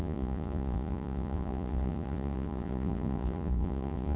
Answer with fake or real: fake